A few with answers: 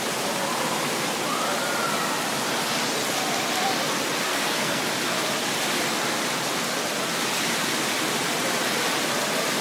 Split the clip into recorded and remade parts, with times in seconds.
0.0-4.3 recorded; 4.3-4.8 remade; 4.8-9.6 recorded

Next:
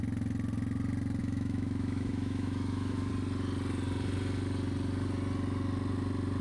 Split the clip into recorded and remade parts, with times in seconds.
0.0-1.2 recorded; 1.2-3.1 remade; 3.1-6.4 recorded

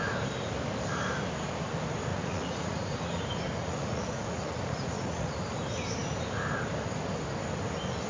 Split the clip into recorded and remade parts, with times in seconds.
0.0-2.1 recorded; 2.1-3.2 remade; 3.2-3.6 recorded; 3.6-5.5 remade; 5.5-8.1 recorded